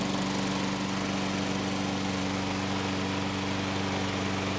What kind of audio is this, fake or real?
real